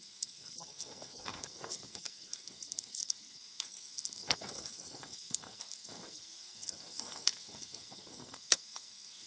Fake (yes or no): yes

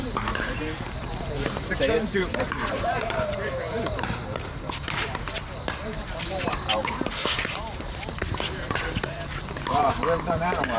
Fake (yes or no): yes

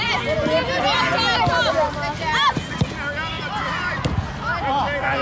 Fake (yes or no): no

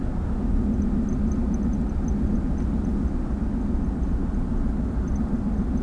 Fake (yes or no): no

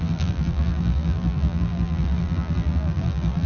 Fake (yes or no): yes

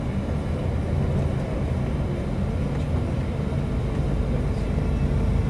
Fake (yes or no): no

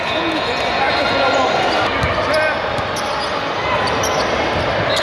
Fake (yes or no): no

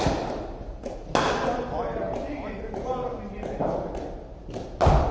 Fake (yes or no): no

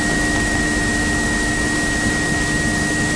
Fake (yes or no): no